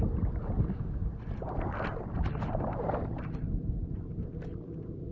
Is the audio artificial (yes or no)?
yes